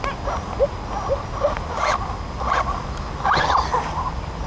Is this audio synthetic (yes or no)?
no